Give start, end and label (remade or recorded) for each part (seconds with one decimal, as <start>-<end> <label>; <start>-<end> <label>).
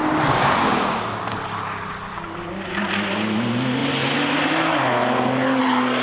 0.0-6.0 recorded